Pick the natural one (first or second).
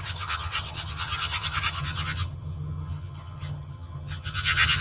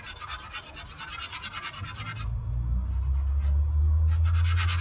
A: second